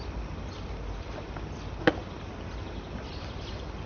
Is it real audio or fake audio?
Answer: real